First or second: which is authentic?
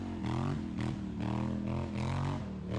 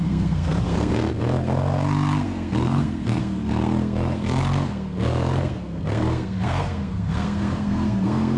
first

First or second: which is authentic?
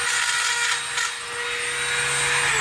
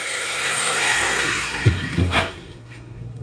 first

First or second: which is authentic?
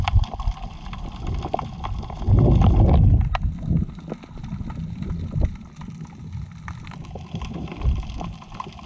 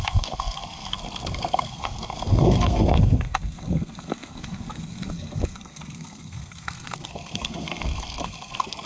first